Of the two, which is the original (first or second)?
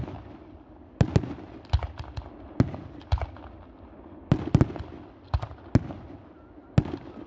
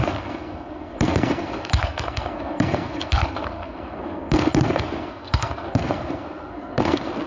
first